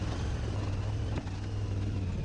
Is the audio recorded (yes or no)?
yes